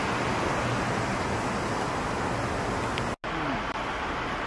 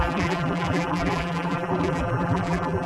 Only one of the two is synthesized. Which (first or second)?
second